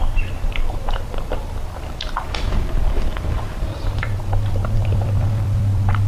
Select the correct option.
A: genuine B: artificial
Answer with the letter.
B